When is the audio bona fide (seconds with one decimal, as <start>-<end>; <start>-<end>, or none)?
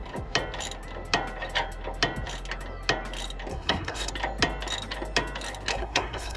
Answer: 0.0-3.5; 4.1-5.7